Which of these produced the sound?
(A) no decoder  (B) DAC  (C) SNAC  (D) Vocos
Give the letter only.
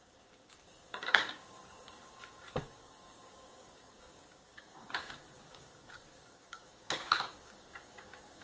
B